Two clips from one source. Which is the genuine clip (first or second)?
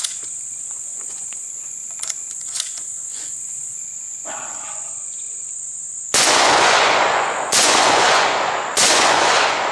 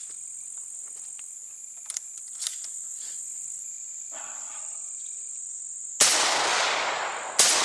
second